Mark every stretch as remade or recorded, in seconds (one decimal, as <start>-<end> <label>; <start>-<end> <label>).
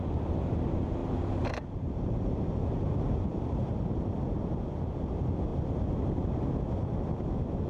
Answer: 0.0-1.0 recorded; 1.0-3.7 remade; 3.7-7.7 recorded